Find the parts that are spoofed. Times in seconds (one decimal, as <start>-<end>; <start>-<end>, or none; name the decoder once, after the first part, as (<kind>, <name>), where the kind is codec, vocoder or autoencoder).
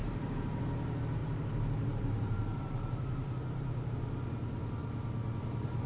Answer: 0.0-0.6 (vocoder, BigVGAN v2); 1.2-3.9